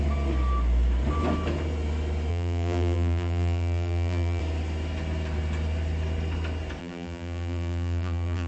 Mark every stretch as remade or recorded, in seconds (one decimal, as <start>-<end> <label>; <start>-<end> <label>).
0.0-2.3 recorded; 2.3-4.4 remade; 4.4-6.8 recorded; 6.8-8.5 remade